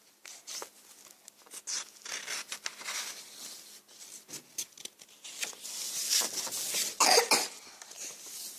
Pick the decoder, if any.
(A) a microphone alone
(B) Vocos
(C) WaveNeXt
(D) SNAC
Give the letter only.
A